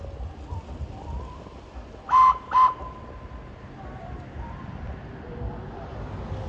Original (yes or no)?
yes